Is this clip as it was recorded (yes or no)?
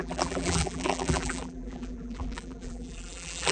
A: no